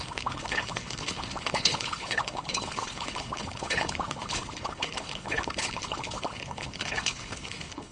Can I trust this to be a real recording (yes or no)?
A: no